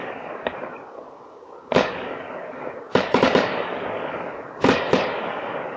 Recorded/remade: remade